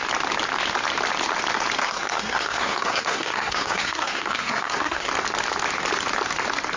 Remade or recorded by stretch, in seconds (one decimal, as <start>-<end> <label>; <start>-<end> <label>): 0.0-1.8 recorded; 1.8-5.1 remade; 5.1-6.8 recorded